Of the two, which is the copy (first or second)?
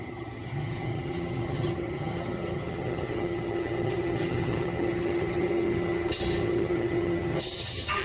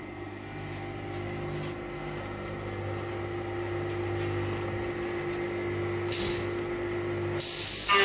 first